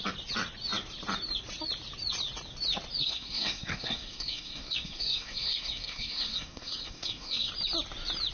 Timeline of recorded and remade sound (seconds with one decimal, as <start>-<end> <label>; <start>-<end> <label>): 0.0-3.0 recorded; 3.0-7.5 remade; 7.5-8.3 recorded